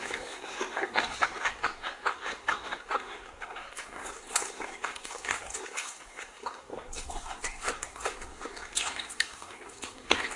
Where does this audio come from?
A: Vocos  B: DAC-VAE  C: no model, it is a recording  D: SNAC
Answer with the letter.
D